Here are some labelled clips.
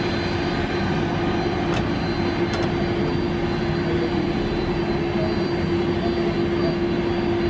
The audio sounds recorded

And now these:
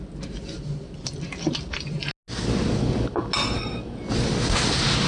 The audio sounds recorded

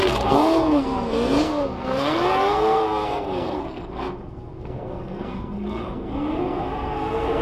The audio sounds remade